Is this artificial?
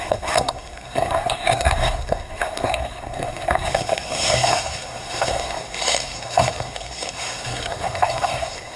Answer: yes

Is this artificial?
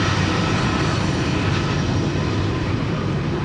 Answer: no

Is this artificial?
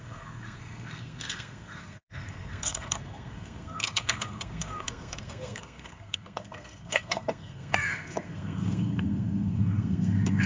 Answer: yes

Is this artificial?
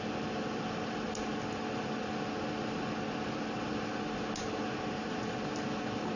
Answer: no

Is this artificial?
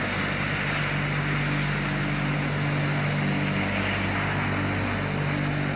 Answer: no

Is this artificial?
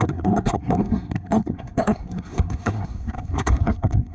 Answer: yes